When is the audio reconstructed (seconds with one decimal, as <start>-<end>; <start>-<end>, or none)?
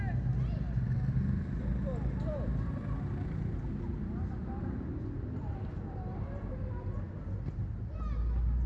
none